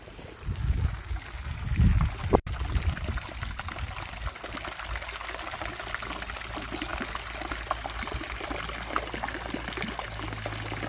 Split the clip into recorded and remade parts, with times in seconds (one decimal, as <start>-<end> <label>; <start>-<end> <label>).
0.0-10.9 recorded

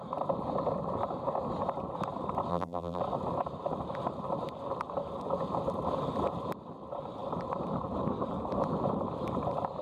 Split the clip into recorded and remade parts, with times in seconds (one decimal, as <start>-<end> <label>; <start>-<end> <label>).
0.0-2.5 recorded; 2.5-3.0 remade; 3.0-9.8 recorded

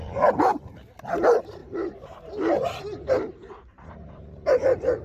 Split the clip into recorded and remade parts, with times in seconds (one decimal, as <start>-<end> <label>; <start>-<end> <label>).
0.0-1.6 recorded; 1.6-4.6 remade; 4.6-5.0 recorded

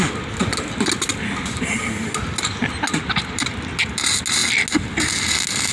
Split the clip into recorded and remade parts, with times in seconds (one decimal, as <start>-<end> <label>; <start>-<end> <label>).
0.0-5.7 recorded

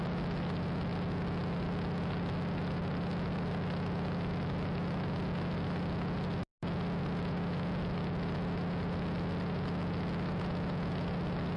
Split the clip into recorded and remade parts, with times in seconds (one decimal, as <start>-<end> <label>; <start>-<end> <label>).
0.0-11.6 recorded

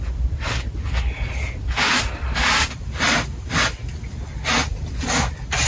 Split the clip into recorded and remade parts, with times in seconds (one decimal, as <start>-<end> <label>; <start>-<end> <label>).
0.0-3.3 remade; 3.3-5.7 recorded